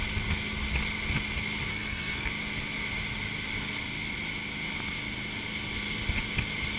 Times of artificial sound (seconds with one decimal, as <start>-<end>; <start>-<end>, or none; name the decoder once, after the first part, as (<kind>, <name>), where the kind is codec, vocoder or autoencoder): 1.7-2.3 (codec, SNAC)